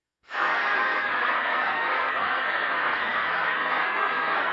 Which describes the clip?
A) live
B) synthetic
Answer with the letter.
B